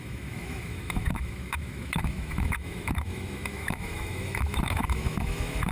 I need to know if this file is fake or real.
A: fake